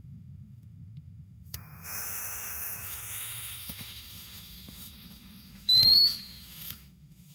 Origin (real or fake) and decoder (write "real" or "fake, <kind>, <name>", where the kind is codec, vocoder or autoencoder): fake, autoencoder, DAC-VAE